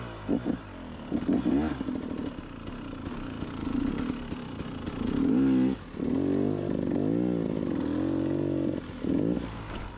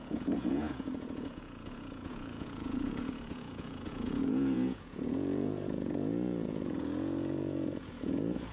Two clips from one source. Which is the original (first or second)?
first